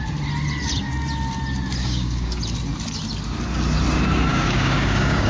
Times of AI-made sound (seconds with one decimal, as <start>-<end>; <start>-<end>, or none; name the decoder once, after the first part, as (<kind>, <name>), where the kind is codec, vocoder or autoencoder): 1.8-2.4 (codec, DAC); 4.3-5.3